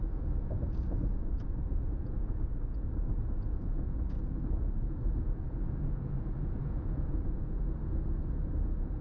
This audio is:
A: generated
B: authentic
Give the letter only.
A